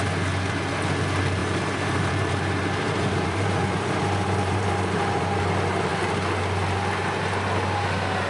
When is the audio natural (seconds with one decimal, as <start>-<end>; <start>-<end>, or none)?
0.0-1.4; 5.4-8.3